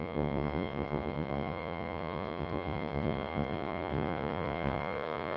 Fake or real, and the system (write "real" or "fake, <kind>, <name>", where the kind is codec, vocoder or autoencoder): fake, vocoder, Vocos